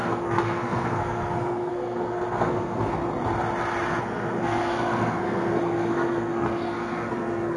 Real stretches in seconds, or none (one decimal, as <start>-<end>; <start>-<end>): 3.0-4.0